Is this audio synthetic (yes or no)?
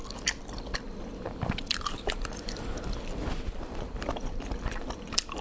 yes